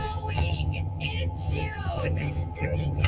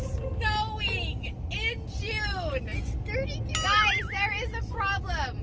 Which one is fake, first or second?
first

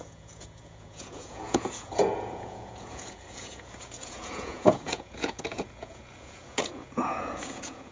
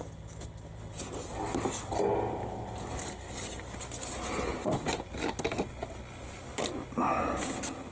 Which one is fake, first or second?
first